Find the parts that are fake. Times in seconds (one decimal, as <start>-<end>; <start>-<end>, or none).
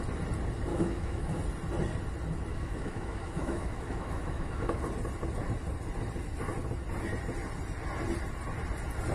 0.7-1.4; 2.5-4.8